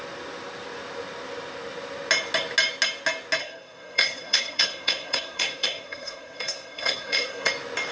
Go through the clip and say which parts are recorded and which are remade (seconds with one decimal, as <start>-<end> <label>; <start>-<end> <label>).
0.0-3.4 recorded; 3.4-7.5 remade; 7.5-7.9 recorded